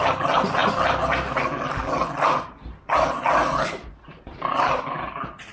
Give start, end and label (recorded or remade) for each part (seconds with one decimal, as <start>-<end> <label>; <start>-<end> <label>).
0.0-5.5 recorded